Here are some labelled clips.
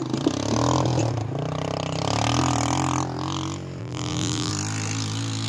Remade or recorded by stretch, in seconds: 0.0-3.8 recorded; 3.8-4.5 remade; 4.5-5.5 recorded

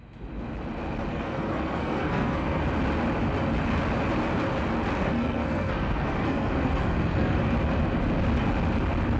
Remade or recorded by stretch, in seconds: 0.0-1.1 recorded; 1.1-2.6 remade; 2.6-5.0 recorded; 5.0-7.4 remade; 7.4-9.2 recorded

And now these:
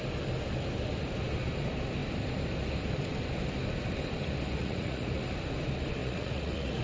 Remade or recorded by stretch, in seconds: 0.0-4.6 recorded; 4.6-5.2 remade; 5.2-6.0 recorded; 6.0-6.8 remade

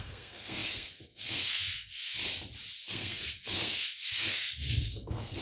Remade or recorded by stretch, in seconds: 0.0-2.2 remade; 2.2-2.9 recorded; 2.9-5.4 remade

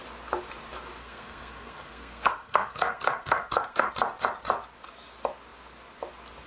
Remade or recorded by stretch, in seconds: 0.0-1.0 recorded; 1.0-3.9 remade; 3.9-6.5 recorded

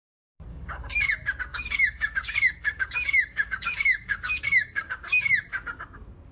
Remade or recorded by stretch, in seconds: 0.0-0.5 recorded; 0.5-1.1 remade; 1.1-1.5 recorded; 1.5-5.3 remade; 5.3-6.3 recorded

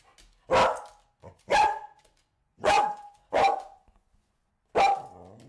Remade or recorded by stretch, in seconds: 0.0-1.2 recorded; 1.2-4.5 remade; 4.5-5.5 recorded